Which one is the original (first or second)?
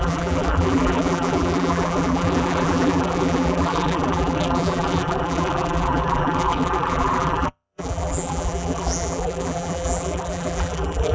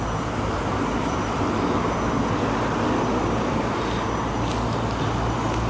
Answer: second